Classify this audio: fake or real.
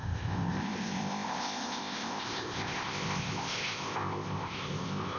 fake